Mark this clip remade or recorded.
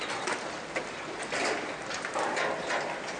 recorded